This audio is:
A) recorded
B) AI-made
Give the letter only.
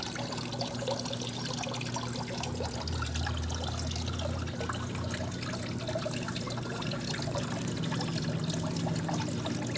A